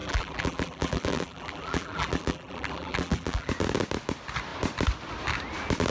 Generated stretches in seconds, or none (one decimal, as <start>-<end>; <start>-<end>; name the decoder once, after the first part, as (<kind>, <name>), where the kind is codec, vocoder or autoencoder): 0.0-3.5 (vocoder, BigVGAN v2)